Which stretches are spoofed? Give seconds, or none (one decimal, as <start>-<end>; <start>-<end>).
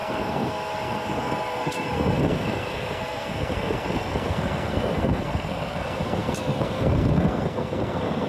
0.0-8.3